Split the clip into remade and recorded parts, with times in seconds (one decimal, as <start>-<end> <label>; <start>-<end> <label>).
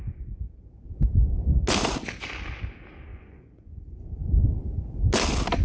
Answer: 0.0-3.1 recorded; 3.1-4.4 remade; 4.4-5.6 recorded